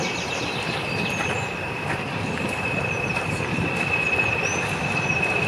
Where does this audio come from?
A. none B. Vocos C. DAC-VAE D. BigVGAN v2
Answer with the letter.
D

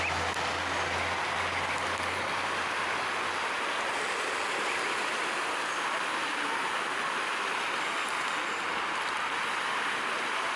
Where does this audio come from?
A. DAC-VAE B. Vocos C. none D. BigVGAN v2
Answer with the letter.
C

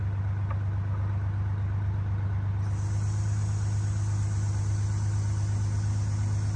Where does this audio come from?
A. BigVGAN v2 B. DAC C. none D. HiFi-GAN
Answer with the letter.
C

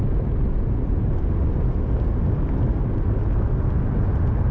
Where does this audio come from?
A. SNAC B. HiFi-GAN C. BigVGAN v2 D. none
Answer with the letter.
D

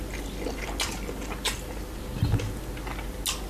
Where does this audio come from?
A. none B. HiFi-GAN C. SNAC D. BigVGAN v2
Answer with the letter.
A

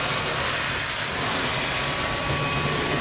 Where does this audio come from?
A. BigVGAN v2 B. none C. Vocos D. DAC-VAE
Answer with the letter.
B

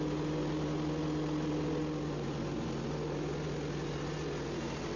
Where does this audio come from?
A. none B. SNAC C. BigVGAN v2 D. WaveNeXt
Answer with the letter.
A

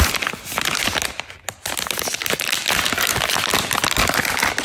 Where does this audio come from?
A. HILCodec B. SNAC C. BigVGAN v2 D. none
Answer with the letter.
D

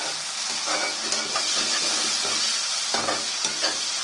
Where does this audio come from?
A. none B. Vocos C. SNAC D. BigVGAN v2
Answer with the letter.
A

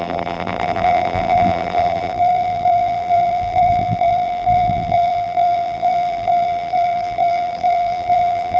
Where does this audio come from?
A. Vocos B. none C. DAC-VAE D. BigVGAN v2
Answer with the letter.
D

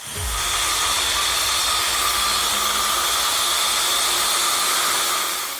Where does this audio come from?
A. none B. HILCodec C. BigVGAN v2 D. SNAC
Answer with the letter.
A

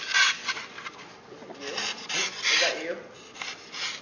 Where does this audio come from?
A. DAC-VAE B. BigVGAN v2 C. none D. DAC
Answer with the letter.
C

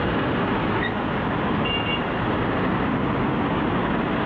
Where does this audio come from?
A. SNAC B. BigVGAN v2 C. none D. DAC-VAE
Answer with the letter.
C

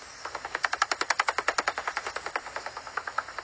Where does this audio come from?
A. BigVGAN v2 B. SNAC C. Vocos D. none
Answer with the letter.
D